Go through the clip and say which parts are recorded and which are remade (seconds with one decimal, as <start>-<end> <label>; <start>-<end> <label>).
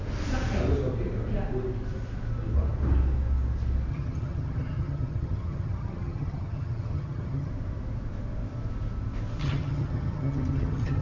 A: 0.0-3.9 recorded; 3.9-7.5 remade; 7.5-9.4 recorded; 9.4-11.0 remade